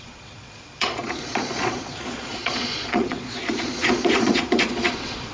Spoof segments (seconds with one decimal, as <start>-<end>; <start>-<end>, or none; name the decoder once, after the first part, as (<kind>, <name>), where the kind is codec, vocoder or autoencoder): 0.0-5.3 (vocoder, Vocos)